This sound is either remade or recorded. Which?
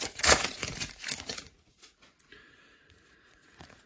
remade